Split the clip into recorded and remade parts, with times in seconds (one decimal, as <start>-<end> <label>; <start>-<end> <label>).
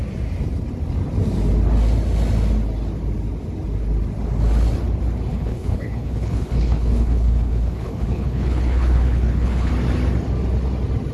0.0-5.3 recorded; 5.3-9.7 remade; 9.7-11.1 recorded